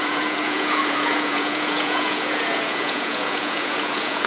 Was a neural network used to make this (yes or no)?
yes